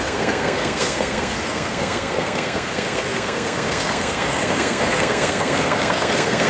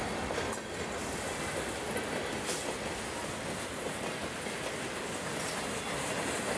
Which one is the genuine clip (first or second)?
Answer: second